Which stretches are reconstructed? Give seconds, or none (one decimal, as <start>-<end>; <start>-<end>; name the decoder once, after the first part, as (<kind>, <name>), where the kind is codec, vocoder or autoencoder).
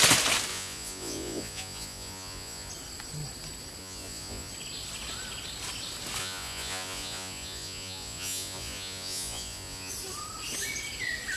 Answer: 0.5-2.7 (vocoder, Vocos); 3.8-4.5; 6.2-9.9